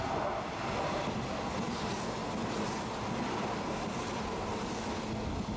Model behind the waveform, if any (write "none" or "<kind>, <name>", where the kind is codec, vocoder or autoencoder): none